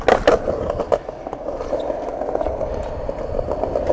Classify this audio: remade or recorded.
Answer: recorded